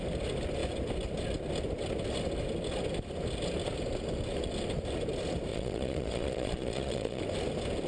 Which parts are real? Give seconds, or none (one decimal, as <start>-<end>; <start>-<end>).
0.0-5.5; 7.2-7.9